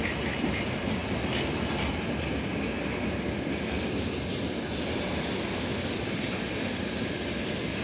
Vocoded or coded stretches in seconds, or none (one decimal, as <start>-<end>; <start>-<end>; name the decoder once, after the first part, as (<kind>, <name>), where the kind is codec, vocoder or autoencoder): none